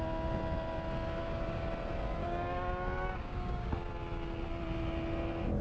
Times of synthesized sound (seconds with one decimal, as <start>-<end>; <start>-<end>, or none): 1.2-1.7; 2.2-3.7